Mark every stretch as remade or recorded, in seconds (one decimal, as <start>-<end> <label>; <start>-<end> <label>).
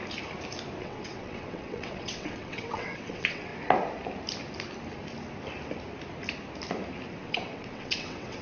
0.0-0.8 recorded; 0.8-3.5 remade; 3.5-7.1 recorded; 7.1-8.4 remade